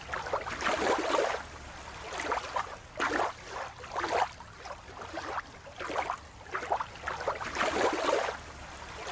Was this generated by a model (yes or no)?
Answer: no